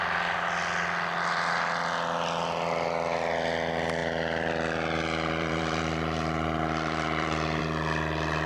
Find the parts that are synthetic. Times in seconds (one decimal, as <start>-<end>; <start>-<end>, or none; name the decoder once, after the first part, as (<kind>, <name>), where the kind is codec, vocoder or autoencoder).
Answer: 4.0-7.6 (vocoder, BigVGAN v2)